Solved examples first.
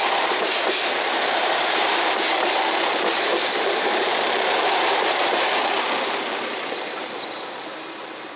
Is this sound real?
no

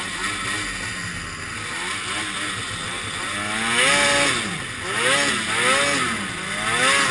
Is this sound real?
yes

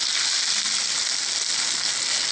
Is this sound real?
yes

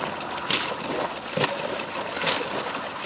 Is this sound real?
yes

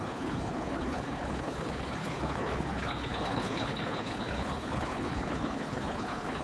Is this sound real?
no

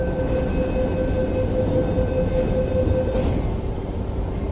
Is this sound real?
yes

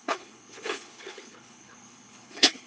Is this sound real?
no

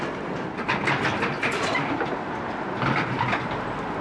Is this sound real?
yes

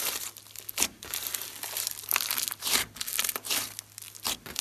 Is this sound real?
yes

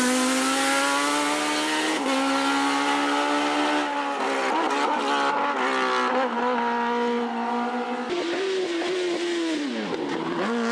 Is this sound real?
yes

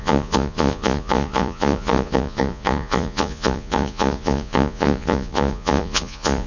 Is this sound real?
no